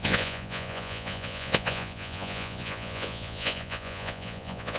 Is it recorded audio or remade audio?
remade